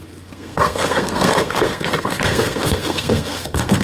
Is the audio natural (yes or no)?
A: no